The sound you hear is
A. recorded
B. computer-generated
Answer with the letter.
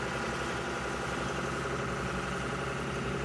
A